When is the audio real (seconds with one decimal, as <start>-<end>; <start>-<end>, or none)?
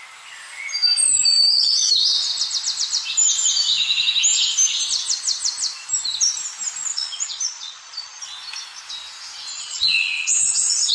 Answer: 0.0-6.9; 8.2-9.5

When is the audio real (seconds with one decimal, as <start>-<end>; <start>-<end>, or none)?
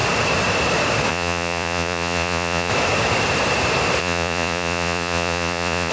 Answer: 0.0-1.1; 2.7-4.0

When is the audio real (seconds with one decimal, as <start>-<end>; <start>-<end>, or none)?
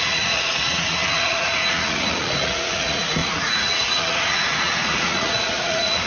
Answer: none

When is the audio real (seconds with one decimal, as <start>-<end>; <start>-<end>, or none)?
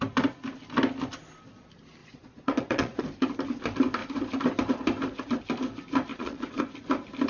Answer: 0.0-2.0; 3.0-6.1; 6.6-7.3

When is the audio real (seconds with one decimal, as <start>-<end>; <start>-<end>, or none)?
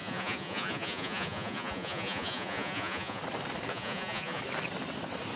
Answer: 3.2-3.7; 4.4-5.4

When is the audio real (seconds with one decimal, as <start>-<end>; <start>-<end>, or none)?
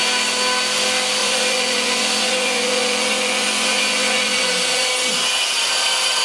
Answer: 0.0-1.2; 4.9-6.2